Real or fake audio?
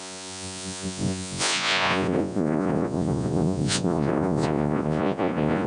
fake